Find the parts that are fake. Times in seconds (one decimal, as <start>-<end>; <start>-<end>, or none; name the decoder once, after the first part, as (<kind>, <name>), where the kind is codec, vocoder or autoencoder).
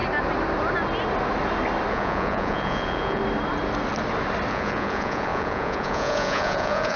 1.9-3.2 (vocoder, Vocos); 4.5-7.0